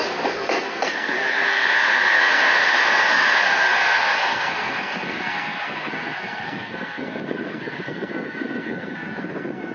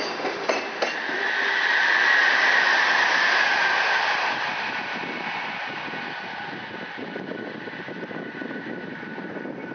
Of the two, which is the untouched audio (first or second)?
second